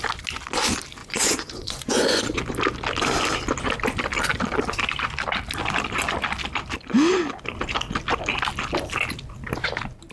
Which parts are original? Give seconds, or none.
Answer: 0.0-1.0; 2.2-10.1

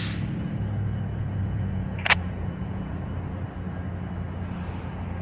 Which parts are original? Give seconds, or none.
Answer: 0.0-1.1; 3.1-5.2

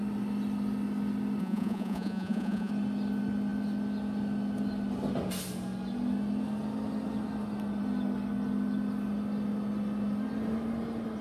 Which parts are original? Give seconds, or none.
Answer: 0.0-1.4; 2.7-11.2

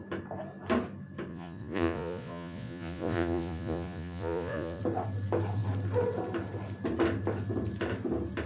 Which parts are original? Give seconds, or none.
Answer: 0.0-1.3; 4.8-8.5

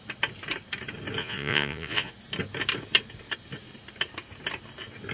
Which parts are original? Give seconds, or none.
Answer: 0.0-1.2; 2.1-5.1

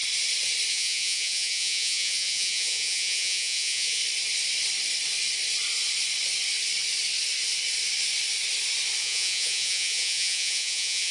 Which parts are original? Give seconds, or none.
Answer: 0.0-0.7; 4.0-9.0